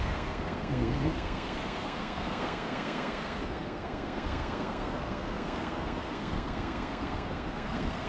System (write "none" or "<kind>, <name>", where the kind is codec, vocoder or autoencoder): codec, SNAC